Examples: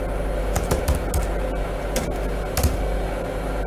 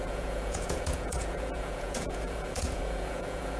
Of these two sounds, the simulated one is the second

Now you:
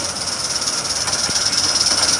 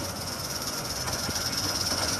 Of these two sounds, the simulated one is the second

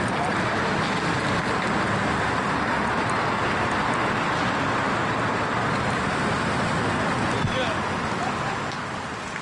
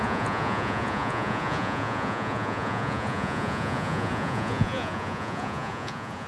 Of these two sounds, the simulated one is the second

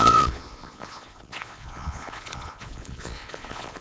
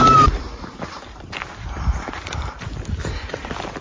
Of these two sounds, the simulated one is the first